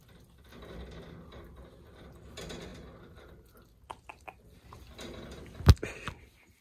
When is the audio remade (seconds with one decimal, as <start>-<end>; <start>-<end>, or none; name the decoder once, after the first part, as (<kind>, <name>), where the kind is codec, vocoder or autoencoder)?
none

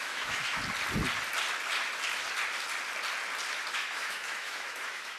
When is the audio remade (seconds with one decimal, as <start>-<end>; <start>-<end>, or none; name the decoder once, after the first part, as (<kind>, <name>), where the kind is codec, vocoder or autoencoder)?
0.0-0.6 (autoencoder, DAC-VAE); 3.7-5.2

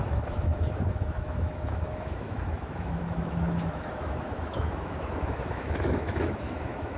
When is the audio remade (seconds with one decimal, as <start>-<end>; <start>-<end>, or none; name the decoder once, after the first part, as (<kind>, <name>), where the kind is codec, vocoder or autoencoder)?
0.0-7.0 (autoencoder, DAC-VAE)

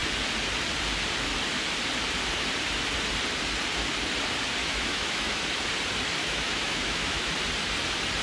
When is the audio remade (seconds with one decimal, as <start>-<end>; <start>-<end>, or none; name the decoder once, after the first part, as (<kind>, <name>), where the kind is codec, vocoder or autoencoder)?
4.6-5.4 (autoencoder, DAC-VAE); 6.2-7.3

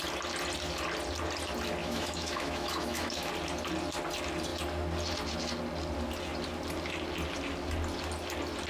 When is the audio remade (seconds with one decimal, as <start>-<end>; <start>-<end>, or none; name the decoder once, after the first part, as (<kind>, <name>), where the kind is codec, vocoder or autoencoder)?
1.8-3.3 (autoencoder, DAC-VAE)